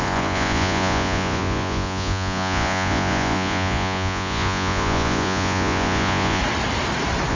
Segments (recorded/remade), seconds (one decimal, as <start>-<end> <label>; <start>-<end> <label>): 0.0-6.4 remade; 6.4-7.3 recorded